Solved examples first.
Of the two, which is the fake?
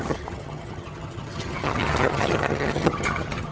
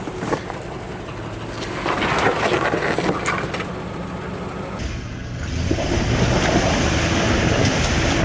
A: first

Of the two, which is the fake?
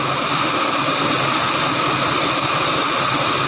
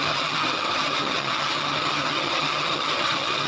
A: second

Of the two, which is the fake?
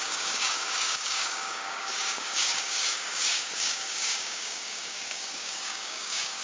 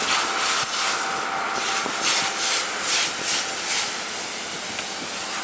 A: first